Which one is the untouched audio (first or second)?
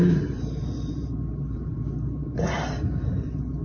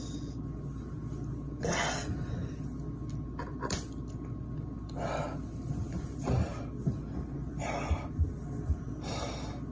second